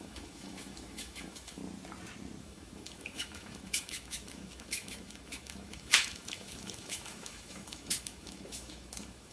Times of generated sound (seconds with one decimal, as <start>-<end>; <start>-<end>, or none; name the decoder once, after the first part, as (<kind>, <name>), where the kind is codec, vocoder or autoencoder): 0.0-1.6 (autoencoder, DAC-VAE); 2.4-9.3